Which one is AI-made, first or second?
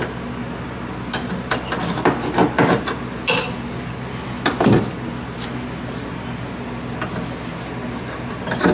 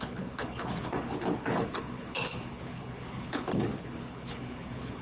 second